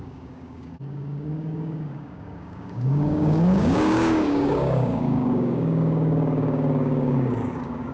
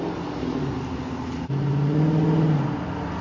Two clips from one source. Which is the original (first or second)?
second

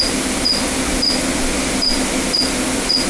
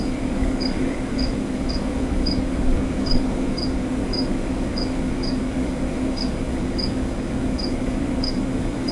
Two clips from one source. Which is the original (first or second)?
first